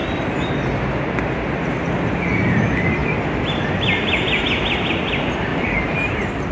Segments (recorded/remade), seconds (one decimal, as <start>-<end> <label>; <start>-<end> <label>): 0.0-5.5 recorded; 5.5-6.1 remade; 6.1-6.5 recorded